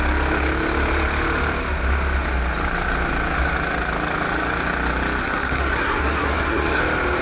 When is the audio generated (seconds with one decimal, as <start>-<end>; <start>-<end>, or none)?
5.2-6.8